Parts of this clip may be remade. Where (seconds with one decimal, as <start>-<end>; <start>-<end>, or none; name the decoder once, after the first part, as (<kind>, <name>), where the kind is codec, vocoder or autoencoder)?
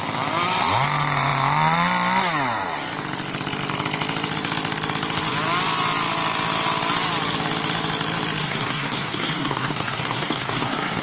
8.4-11.0 (codec, SNAC)